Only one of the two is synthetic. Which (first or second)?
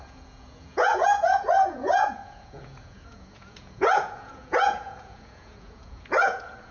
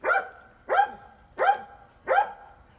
first